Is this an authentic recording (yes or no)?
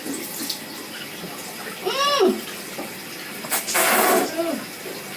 yes